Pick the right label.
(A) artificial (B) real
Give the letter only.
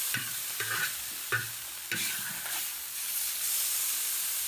B